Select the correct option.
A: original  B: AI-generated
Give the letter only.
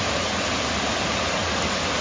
A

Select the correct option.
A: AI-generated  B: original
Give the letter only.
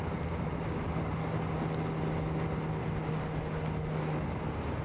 B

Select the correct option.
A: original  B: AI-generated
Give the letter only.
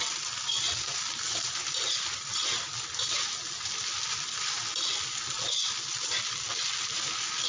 A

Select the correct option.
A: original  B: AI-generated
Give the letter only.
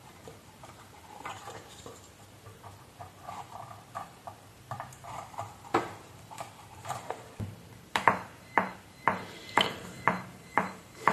B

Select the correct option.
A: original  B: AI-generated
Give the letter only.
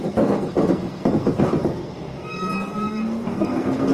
B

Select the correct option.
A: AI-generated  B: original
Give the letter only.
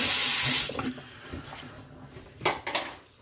B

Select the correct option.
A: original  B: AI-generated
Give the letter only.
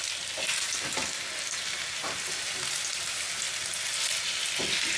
A